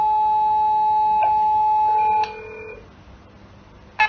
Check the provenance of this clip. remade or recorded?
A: recorded